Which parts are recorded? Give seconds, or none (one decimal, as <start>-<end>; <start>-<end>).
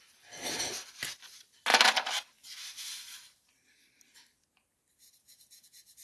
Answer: 0.0-6.0